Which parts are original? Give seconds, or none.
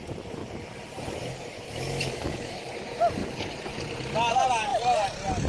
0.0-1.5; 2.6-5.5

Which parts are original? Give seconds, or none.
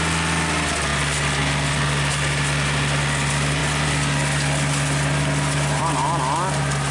0.0-6.9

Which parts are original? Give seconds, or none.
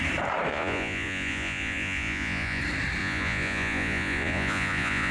0.0-0.5; 2.6-3.0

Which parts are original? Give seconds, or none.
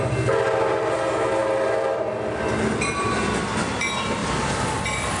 0.0-5.2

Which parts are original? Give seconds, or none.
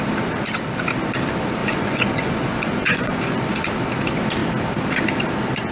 0.0-1.6; 3.4-5.7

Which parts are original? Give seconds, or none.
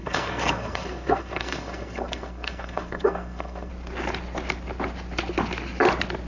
3.7-6.3